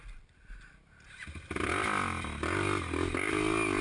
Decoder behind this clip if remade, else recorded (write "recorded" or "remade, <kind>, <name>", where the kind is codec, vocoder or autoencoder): recorded